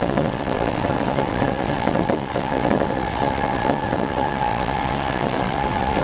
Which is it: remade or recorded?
remade